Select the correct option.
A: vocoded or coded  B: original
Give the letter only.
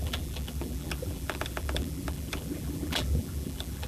A